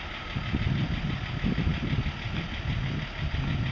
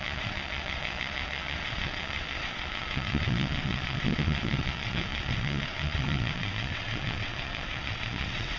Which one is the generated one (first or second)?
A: second